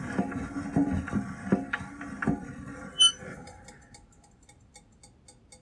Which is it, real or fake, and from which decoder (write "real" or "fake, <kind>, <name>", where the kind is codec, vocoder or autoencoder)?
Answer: real